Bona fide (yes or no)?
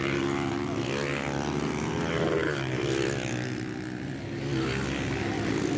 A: yes